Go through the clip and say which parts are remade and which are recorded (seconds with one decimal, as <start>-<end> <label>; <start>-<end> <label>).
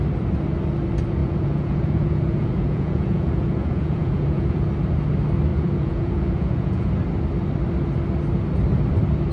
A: 0.0-1.2 recorded; 1.2-4.7 remade; 4.7-5.5 recorded; 5.5-6.9 remade; 6.9-9.3 recorded